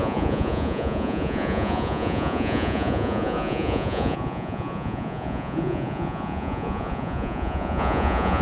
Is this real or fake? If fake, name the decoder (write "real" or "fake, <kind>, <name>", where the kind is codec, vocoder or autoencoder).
fake, vocoder, Vocos